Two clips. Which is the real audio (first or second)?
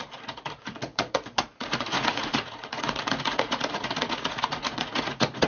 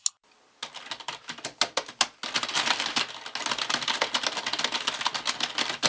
second